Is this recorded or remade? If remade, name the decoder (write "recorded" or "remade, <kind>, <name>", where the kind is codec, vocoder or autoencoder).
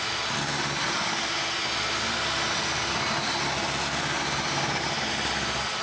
recorded